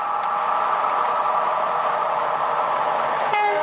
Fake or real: real